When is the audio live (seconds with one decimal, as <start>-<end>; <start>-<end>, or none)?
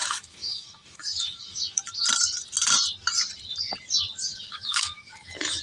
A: 2.0-4.3